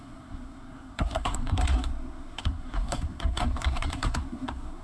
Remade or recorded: remade